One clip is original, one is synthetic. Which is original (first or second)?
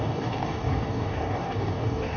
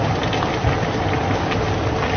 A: second